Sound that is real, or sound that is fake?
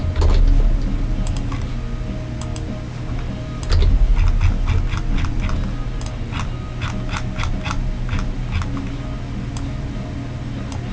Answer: real